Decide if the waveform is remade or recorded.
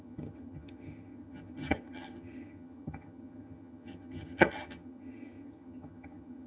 remade